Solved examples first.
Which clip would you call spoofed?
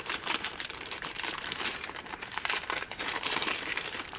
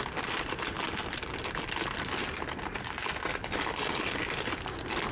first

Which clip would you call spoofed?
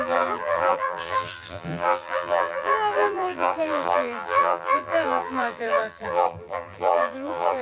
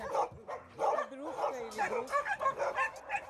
first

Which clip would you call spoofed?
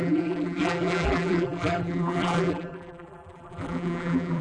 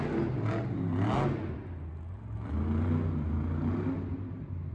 first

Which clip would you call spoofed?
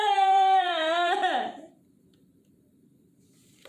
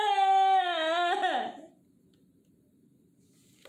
first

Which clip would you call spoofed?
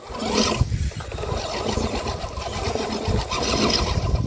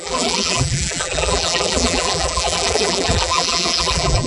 second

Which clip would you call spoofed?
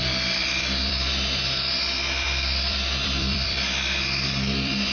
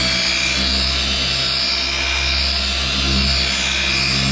first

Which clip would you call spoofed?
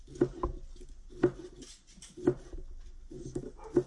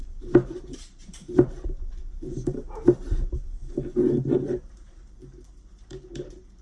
second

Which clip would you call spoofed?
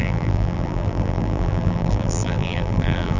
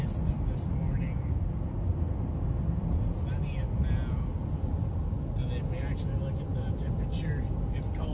first